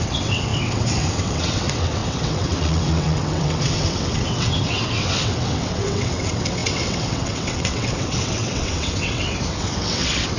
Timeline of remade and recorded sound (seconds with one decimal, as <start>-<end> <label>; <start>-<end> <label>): 0.0-10.4 remade